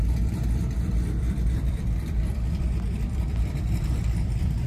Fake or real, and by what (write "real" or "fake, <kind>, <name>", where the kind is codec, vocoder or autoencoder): fake, vocoder, BigVGAN v2